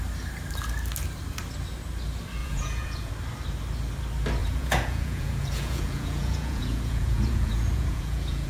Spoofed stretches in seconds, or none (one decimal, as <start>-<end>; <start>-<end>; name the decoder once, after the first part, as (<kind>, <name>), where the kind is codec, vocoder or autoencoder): 2.4-3.1 (vocoder, Vocos); 4.4-8.5